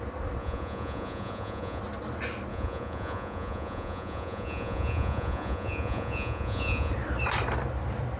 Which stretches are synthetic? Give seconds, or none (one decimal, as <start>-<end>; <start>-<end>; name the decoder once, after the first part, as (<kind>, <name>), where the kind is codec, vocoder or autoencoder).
0.4-1.8 (vocoder, Vocos); 2.5-6.9